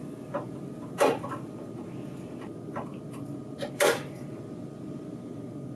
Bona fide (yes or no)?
no